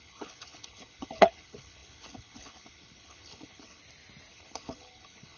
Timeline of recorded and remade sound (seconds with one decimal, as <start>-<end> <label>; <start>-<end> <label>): 0.0-3.8 remade; 3.8-4.3 recorded; 4.3-5.4 remade